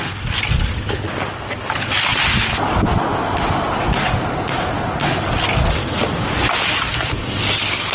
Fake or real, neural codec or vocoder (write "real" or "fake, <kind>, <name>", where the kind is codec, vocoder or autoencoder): real